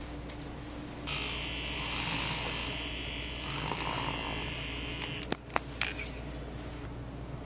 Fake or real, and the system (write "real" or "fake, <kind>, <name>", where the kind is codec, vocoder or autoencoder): real